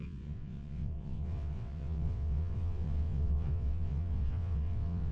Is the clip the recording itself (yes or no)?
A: no